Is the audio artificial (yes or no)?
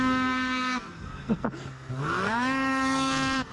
yes